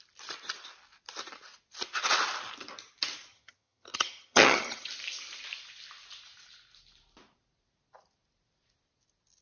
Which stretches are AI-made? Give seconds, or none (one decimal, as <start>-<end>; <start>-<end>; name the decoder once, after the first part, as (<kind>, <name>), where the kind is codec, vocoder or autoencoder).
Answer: 3.3-4.9 (vocoder, HiFi-GAN)